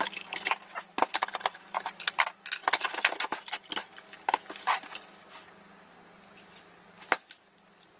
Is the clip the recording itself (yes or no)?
yes